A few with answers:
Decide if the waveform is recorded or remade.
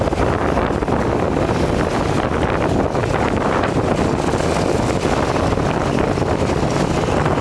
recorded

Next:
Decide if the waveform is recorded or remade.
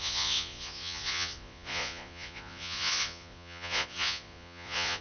remade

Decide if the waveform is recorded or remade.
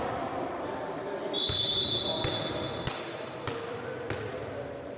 recorded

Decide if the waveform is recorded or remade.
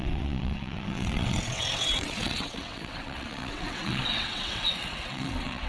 remade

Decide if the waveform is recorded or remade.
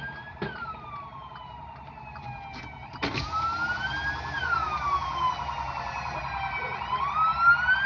recorded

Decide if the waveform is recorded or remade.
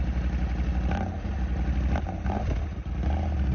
recorded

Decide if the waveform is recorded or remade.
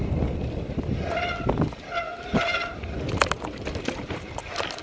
recorded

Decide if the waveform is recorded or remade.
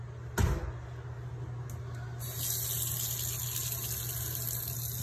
recorded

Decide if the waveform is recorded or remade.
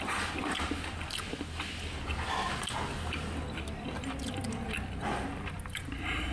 recorded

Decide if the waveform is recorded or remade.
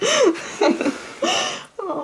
remade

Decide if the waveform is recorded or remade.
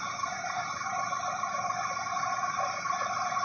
recorded